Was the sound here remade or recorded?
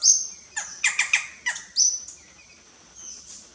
recorded